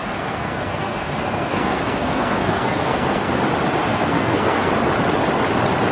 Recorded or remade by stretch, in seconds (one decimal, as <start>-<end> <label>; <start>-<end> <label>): 0.0-3.4 remade; 3.4-3.9 recorded; 3.9-4.7 remade; 4.7-5.9 recorded